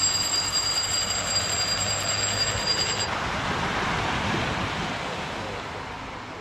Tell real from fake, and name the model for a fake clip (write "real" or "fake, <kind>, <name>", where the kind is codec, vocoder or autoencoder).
real